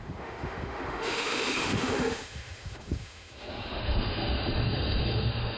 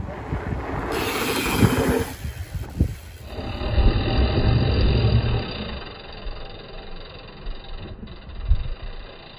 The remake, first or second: first